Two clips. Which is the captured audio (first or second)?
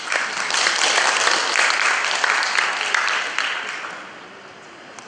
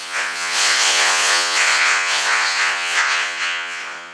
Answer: first